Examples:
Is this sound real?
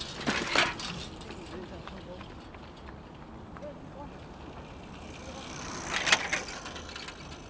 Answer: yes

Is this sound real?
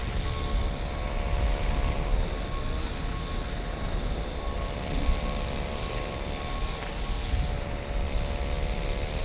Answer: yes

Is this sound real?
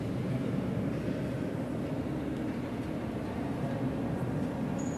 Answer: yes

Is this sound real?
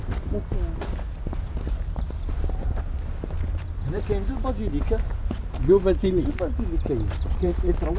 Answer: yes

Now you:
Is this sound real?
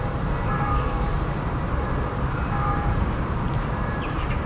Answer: no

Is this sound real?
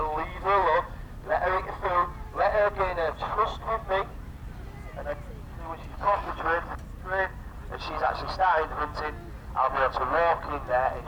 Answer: yes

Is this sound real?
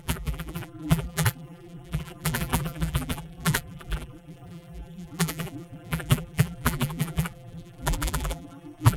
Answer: no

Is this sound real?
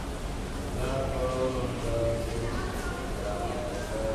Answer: yes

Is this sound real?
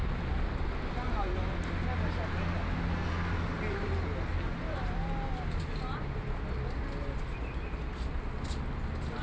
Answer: yes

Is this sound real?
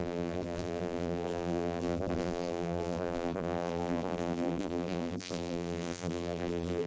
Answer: no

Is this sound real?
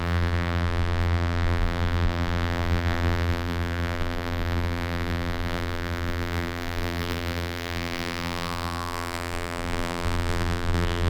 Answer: no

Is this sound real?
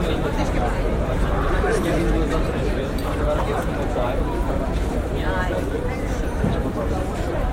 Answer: no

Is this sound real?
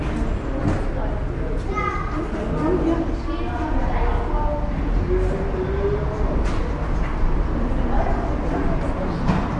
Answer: yes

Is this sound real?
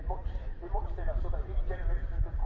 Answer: no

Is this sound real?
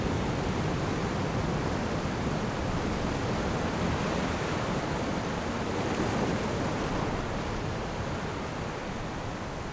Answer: yes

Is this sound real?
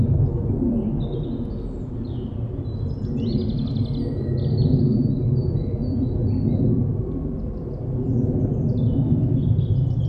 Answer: yes